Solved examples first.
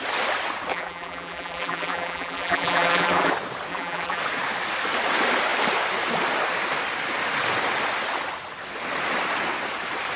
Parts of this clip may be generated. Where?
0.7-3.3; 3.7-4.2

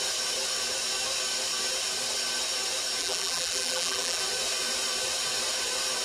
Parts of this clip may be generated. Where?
3.0-4.2